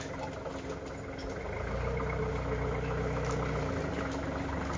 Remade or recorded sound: recorded